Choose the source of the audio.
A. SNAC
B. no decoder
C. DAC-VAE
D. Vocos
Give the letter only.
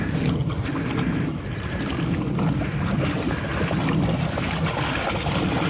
B